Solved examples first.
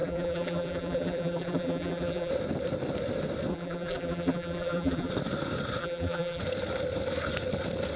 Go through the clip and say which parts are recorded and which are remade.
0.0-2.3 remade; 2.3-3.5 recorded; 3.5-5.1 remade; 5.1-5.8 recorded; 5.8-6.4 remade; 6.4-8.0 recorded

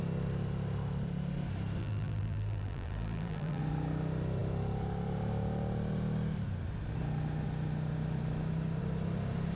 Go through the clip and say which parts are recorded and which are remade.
0.0-1.8 recorded; 1.8-3.6 remade; 3.6-9.6 recorded

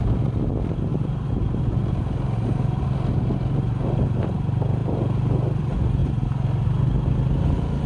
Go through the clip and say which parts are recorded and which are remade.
0.0-0.9 recorded; 0.9-1.8 remade; 1.8-7.9 recorded

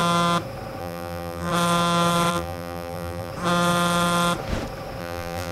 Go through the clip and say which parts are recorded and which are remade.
0.0-0.8 recorded; 0.8-1.5 remade; 1.5-2.3 recorded; 2.3-3.3 remade; 3.3-5.0 recorded; 5.0-5.5 remade